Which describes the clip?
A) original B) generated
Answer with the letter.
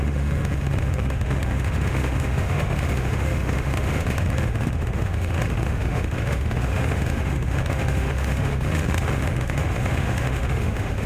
B